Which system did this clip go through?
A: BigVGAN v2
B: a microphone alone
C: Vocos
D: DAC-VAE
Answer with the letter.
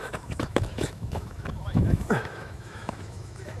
D